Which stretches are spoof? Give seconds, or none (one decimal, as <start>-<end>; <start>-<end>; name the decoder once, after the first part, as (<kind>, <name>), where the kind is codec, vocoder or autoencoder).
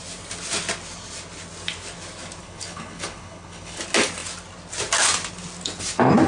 2.4-3.8 (codec, HILCodec)